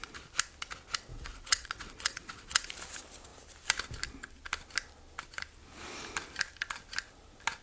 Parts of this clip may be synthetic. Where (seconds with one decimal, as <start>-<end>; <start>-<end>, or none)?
1.1-2.7